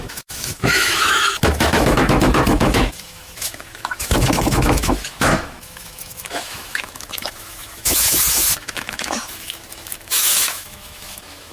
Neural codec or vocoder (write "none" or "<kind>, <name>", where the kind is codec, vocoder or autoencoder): autoencoder, DAC-VAE